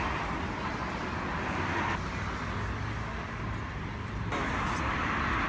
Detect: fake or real real